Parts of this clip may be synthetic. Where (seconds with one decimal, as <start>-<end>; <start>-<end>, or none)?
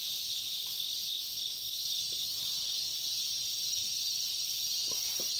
0.0-0.4; 2.3-5.4